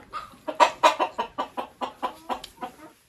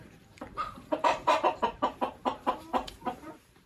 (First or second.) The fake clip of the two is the second